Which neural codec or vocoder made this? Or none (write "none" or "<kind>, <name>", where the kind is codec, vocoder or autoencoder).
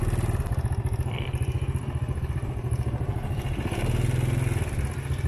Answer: none